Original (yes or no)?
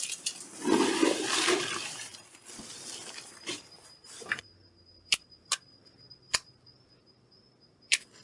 no